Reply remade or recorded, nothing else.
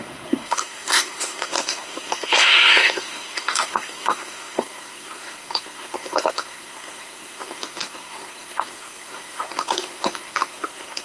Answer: remade